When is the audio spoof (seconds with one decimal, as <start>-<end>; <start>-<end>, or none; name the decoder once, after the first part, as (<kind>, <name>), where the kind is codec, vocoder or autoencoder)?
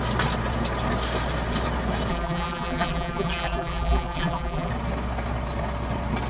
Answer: 2.1-4.7 (vocoder, BigVGAN v2)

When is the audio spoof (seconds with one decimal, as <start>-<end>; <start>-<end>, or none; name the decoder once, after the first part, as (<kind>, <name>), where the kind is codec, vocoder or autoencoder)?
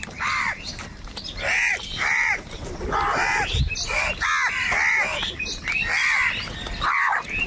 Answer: 0.0-4.3 (vocoder, BigVGAN v2); 4.9-5.6; 6.8-7.5